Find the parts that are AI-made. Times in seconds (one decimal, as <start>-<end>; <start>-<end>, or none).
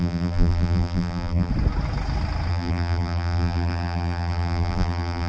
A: 0.0-1.5; 2.5-5.3